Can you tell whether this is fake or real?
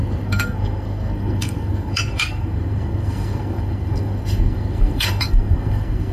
fake